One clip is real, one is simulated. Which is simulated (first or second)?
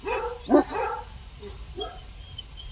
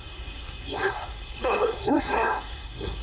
second